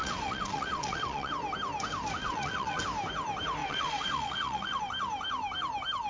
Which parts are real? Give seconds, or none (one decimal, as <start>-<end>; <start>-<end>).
1.3-2.2; 2.8-3.6; 4.8-6.1